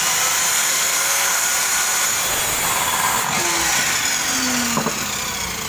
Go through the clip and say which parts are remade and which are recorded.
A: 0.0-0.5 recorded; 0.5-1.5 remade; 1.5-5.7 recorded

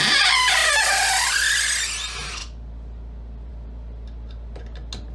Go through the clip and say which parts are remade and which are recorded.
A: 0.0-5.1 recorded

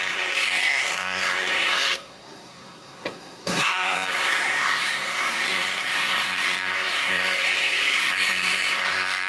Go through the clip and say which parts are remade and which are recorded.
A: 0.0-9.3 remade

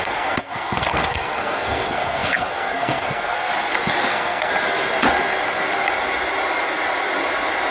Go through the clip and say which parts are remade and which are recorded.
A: 0.0-3.5 remade; 3.5-4.1 recorded; 4.1-4.5 remade; 4.5-7.7 recorded

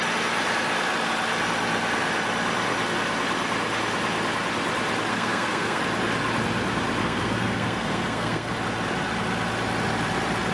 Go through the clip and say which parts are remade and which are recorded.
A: 0.0-5.1 recorded; 5.1-5.8 remade; 5.8-7.0 recorded; 7.0-8.5 remade; 8.5-10.5 recorded